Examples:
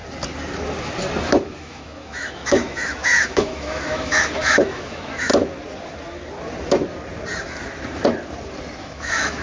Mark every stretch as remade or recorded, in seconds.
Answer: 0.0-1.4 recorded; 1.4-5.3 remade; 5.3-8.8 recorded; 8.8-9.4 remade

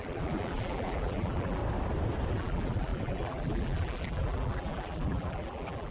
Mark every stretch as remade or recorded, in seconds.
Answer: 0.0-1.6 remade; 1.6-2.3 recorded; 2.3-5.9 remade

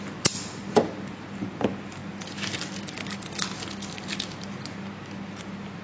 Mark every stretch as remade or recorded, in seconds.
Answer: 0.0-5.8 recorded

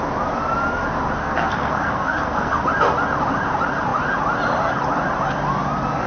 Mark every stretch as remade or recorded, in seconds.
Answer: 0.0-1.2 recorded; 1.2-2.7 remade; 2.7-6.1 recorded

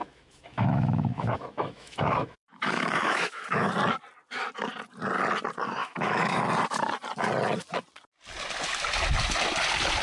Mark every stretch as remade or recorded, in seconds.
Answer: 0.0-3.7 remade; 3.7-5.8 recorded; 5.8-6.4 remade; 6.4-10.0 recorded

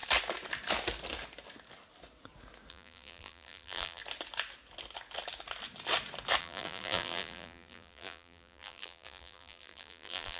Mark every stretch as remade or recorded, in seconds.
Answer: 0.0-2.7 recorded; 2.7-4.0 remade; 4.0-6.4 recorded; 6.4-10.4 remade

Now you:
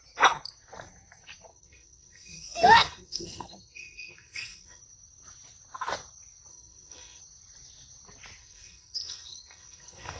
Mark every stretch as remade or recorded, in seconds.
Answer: 0.0-1.5 recorded; 1.5-4.8 remade; 4.8-6.5 recorded; 6.5-7.2 remade; 7.2-8.4 recorded; 8.4-10.2 remade